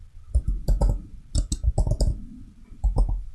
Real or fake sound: real